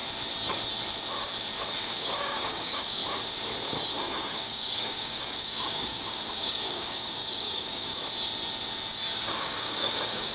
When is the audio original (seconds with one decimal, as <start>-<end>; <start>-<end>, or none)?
0.0-1.8; 3.0-4.1; 7.9-9.4